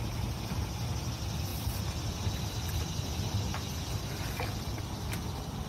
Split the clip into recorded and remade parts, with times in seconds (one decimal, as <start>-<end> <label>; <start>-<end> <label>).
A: 0.0-5.7 recorded